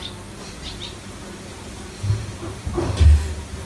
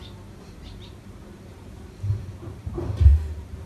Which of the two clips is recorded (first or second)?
first